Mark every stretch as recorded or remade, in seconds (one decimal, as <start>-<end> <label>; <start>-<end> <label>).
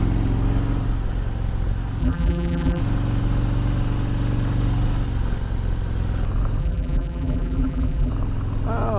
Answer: 0.0-2.0 recorded; 2.0-2.8 remade; 2.8-6.6 recorded; 6.6-8.1 remade; 8.1-9.0 recorded